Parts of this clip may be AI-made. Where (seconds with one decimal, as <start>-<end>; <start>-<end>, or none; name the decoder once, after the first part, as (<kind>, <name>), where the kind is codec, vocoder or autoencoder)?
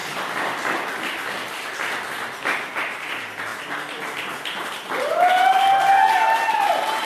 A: none